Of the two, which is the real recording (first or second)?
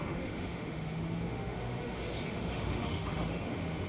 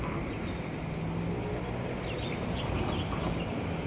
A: second